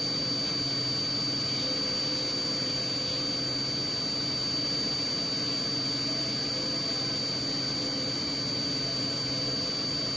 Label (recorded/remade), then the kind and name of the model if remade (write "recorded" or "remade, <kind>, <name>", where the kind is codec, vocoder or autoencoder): recorded